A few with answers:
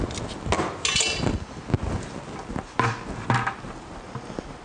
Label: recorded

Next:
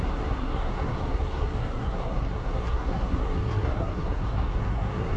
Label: remade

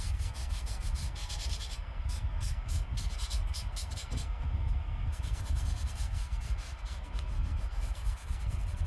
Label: remade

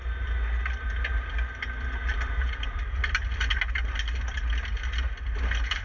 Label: recorded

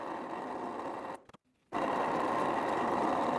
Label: recorded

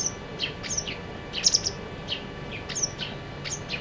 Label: recorded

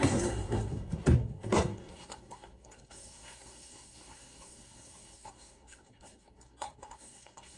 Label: remade